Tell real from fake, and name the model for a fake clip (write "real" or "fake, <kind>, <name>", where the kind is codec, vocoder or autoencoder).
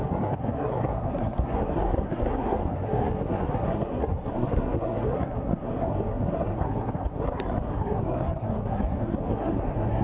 fake, codec, SNAC